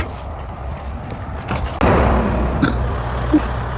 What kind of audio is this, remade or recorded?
recorded